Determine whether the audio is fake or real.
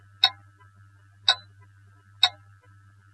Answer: real